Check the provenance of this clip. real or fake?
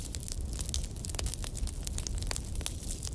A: real